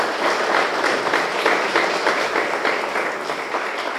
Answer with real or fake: real